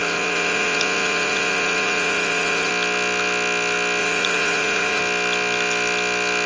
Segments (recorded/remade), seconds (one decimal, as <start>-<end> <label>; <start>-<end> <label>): 0.0-2.7 remade; 2.7-4.0 recorded; 4.0-5.0 remade; 5.0-6.5 recorded